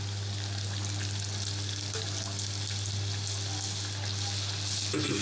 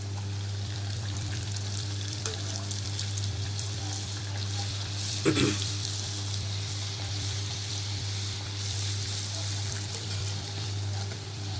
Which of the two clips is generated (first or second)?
second